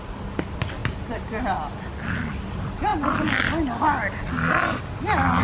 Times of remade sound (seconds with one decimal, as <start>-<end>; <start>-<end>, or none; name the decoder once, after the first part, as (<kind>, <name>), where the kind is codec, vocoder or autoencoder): 0.8-1.9 (vocoder, BigVGAN v2)